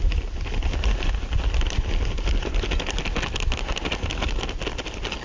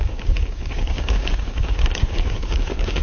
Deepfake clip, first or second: second